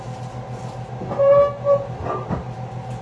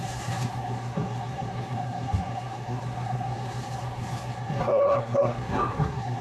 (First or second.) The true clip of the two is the first